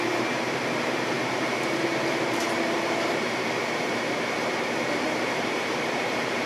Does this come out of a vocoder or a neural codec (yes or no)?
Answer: yes